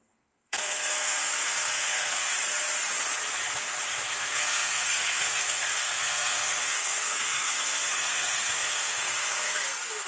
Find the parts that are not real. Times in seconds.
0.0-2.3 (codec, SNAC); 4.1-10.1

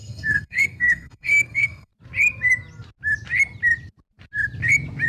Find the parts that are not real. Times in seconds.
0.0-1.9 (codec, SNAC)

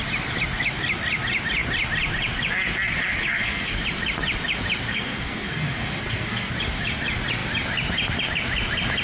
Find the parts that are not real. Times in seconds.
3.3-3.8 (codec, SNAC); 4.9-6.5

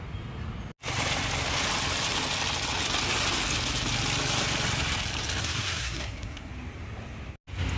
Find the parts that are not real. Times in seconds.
5.4-6.5 (codec, SNAC)

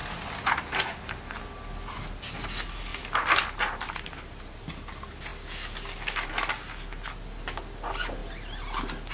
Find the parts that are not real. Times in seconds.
none